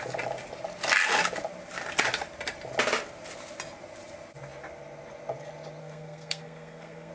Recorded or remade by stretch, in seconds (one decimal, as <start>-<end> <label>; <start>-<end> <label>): 0.0-5.8 recorded; 5.8-7.1 remade